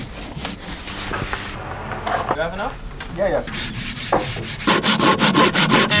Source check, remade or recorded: recorded